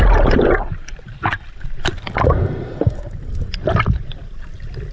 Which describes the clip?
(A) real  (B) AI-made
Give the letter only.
B